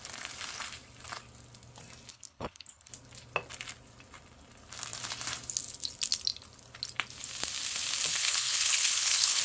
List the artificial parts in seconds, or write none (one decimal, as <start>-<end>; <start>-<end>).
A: 2.1-2.9; 8.1-9.4